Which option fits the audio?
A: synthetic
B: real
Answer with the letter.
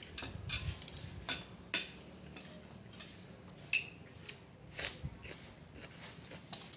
B